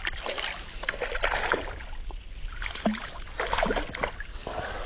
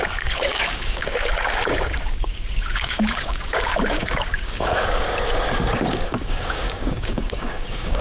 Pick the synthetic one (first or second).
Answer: second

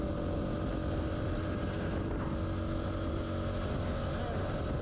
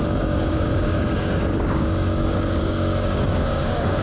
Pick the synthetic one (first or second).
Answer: second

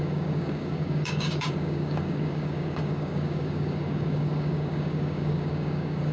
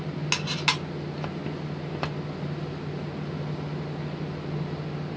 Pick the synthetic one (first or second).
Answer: first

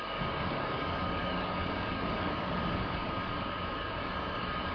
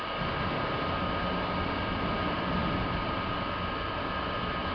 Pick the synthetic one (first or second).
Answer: first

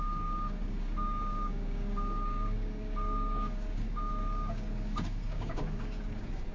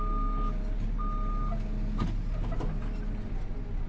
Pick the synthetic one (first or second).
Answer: first